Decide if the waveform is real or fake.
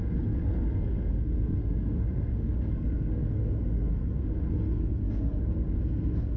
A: fake